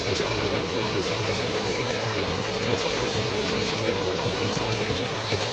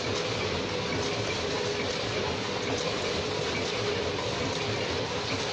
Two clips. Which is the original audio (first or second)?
second